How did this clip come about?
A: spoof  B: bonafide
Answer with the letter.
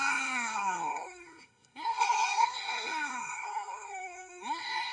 A